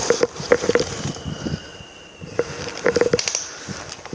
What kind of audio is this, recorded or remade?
recorded